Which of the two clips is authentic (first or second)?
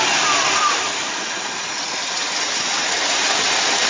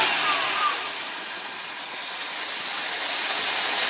second